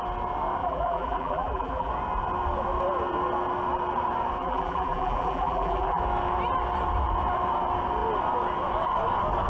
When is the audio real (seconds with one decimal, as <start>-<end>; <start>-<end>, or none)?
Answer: 0.0-0.6; 1.9-4.4; 6.0-9.5